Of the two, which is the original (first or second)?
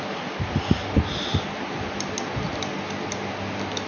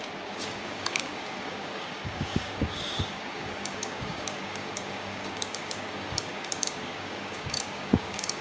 first